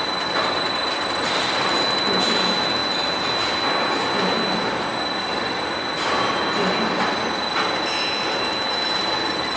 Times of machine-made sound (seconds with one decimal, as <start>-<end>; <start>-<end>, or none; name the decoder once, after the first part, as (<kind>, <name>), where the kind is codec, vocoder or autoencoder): none